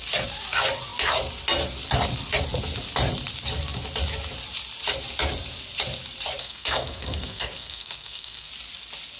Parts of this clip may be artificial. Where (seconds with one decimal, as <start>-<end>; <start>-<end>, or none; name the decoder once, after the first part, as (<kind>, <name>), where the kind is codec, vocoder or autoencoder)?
6.4-8.5 (codec, SNAC)